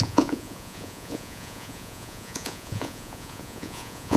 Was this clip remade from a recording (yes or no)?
yes